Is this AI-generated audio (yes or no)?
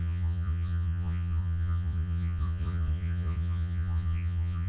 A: yes